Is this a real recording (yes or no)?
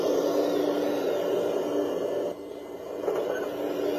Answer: yes